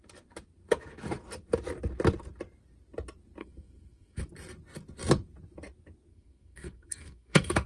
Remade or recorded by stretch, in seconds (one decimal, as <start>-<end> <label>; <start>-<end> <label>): 0.0-3.4 recorded; 3.4-4.2 remade; 4.2-6.1 recorded; 6.1-7.7 remade